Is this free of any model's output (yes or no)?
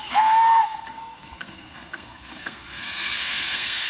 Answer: no